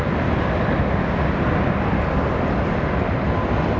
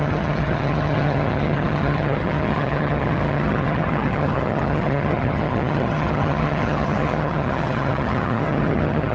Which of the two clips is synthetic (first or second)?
second